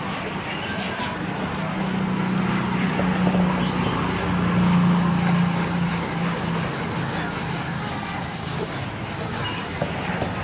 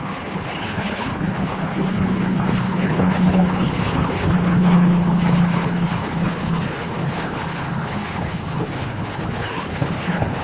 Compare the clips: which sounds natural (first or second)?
first